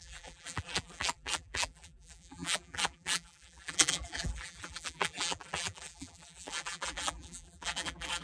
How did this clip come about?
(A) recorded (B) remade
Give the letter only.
B